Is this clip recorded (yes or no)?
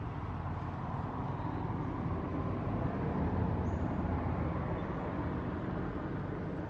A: yes